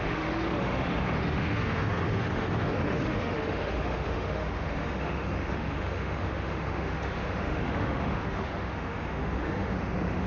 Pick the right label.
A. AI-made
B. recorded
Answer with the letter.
A